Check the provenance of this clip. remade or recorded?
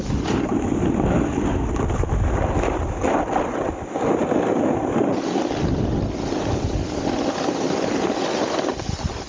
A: recorded